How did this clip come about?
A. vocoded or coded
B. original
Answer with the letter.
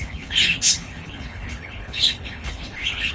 A